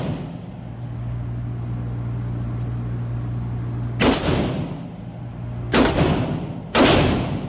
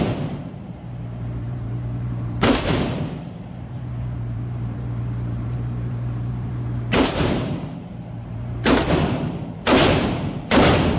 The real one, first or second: first